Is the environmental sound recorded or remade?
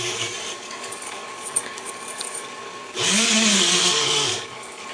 remade